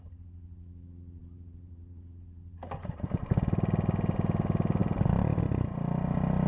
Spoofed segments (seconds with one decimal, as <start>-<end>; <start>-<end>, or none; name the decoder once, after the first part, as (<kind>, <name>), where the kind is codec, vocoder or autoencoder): 1.2-3.3 (vocoder, BigVGAN v2); 4.8-5.4